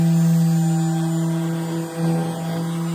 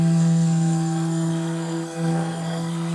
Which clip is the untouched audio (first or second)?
first